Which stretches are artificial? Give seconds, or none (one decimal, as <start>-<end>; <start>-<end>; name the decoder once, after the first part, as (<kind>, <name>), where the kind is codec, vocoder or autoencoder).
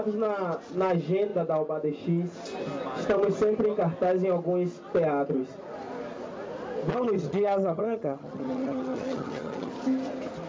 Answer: 6.9-9.7 (vocoder, HiFi-GAN)